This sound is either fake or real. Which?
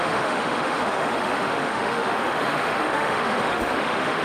fake